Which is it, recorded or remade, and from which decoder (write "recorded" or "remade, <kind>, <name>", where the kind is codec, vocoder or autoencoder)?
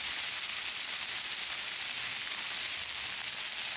recorded